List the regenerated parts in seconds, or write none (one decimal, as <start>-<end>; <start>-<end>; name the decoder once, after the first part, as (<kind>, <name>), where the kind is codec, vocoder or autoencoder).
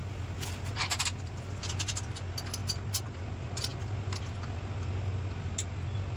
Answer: none